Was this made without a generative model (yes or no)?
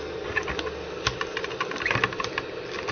yes